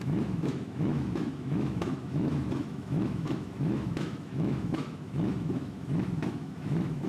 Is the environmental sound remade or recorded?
remade